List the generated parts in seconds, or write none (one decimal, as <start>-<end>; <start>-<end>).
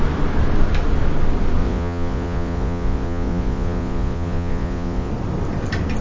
1.6-5.1